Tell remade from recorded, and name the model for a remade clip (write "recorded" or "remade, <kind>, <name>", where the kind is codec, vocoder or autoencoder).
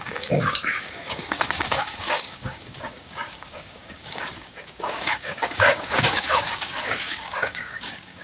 remade, codec, DAC